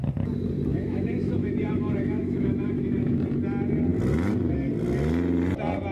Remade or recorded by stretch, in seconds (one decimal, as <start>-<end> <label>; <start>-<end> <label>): 0.0-0.7 recorded; 0.7-3.2 remade; 3.2-5.9 recorded